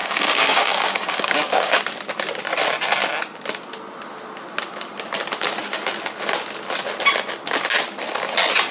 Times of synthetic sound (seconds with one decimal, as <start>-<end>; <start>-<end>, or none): 0.0-1.8